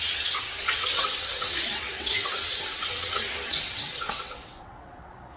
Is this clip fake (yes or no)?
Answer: yes